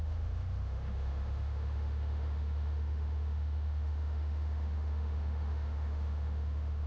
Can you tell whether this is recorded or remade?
remade